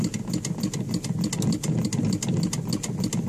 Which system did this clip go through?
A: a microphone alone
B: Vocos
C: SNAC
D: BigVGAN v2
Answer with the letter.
A